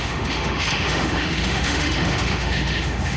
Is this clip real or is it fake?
fake